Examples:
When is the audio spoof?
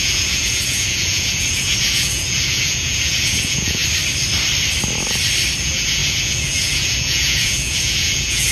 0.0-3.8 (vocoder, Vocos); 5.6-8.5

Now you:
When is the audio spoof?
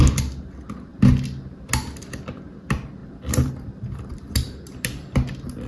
3.0-3.5 (vocoder, BigVGAN v2)